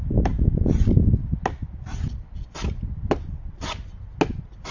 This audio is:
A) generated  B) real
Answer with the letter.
B